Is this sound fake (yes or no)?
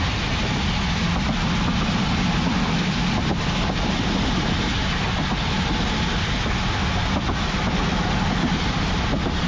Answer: no